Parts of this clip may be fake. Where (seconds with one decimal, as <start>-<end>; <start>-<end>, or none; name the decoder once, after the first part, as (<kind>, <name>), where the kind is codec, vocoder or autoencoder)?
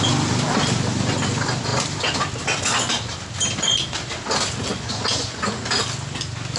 4.7-5.5 (vocoder, Vocos)